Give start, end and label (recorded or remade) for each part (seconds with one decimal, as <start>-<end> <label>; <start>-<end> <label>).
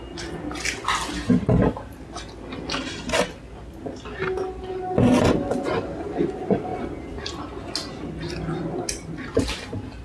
0.0-10.0 recorded